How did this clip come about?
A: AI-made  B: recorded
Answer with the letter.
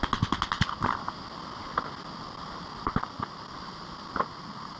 B